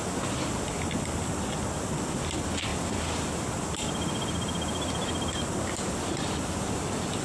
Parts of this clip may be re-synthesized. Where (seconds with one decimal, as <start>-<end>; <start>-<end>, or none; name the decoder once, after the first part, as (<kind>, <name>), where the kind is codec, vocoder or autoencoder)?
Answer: none